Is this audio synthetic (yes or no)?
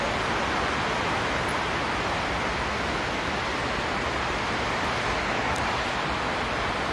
no